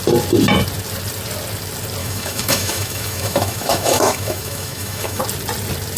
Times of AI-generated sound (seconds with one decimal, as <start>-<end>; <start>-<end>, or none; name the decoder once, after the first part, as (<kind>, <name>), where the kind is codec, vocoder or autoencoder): 2.0-5.2 (autoencoder, DAC-VAE)